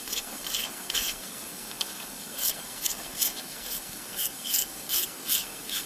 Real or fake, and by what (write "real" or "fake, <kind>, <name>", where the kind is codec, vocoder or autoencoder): fake, codec, SNAC